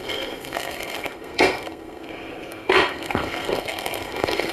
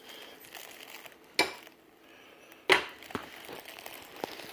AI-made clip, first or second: first